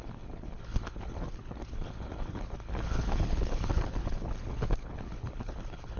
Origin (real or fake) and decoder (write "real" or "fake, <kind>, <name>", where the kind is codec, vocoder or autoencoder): fake, codec, HILCodec